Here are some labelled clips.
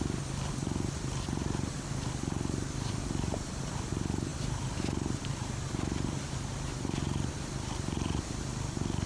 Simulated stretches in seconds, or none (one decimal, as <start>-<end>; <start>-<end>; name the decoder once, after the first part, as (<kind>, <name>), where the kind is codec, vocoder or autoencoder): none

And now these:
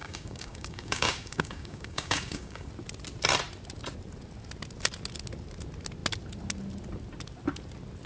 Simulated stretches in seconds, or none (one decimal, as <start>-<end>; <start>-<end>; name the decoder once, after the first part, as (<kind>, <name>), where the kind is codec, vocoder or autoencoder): 0.0-2.7 (codec, DAC)

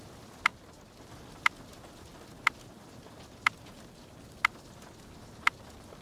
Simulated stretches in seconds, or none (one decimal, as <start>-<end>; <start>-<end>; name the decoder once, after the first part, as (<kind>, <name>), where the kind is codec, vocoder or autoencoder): none

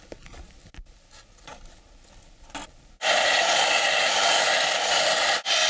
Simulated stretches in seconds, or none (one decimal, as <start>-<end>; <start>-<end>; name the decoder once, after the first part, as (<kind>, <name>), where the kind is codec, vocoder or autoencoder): none

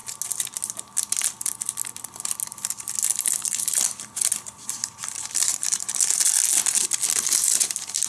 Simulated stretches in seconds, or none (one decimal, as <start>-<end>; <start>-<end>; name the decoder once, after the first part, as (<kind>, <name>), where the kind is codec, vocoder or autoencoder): 5.5-6.2 (vocoder, BigVGAN v2)